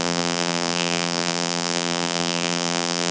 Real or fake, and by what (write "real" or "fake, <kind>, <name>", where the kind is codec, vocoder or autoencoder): fake, vocoder, BigVGAN v2